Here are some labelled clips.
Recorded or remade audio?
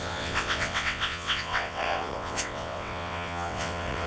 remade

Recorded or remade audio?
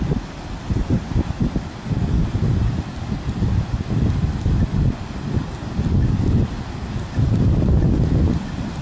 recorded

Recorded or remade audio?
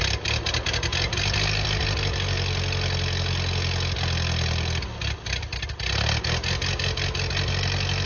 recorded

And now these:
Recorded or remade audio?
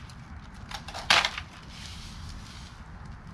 recorded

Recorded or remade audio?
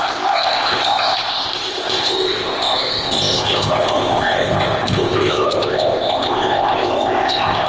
remade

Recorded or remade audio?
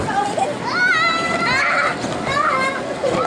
recorded